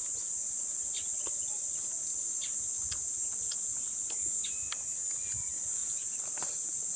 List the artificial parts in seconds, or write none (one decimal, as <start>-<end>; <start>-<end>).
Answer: none